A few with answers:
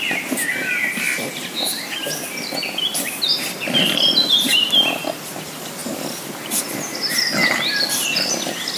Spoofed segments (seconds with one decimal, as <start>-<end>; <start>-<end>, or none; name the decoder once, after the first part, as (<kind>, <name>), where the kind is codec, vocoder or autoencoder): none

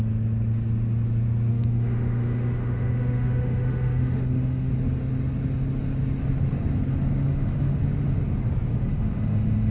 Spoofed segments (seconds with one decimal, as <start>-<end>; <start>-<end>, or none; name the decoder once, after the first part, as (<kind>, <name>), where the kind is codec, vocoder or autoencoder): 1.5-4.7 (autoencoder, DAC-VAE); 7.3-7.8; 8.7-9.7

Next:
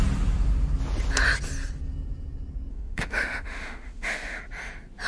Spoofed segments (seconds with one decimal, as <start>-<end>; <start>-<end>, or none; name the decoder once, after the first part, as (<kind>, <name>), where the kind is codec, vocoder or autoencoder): 2.7-4.4 (autoencoder, DAC-VAE)

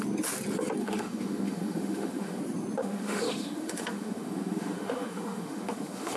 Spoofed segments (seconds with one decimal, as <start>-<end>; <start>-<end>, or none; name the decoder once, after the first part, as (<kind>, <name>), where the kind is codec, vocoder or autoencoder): 0.8-2.4 (autoencoder, DAC-VAE); 2.8-6.2

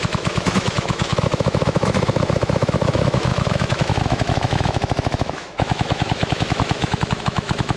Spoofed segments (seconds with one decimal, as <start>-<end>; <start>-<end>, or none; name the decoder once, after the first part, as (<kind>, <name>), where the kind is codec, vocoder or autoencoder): 0.0-7.8 (autoencoder, DAC-VAE)